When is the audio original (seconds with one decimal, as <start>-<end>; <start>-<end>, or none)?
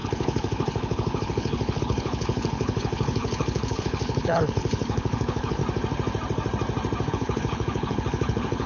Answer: 5.6-7.1